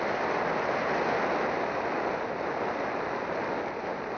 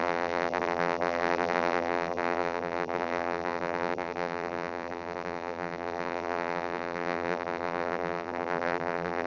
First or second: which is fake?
second